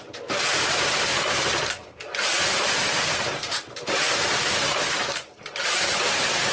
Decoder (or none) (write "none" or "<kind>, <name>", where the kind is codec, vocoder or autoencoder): vocoder, BigVGAN v2